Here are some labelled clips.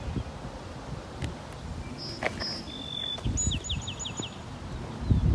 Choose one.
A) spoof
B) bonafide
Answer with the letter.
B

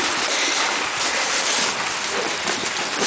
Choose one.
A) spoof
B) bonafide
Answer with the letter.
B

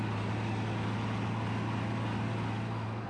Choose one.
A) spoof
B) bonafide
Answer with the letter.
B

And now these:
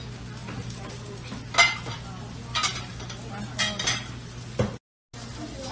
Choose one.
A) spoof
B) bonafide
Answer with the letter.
B